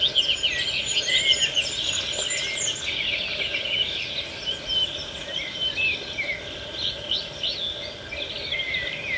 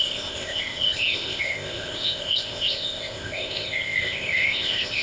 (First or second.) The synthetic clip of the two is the second